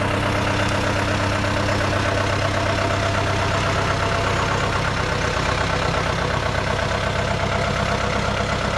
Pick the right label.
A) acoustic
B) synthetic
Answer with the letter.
A